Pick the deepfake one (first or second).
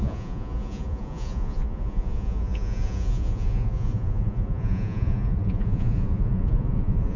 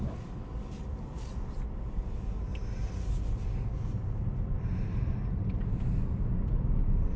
first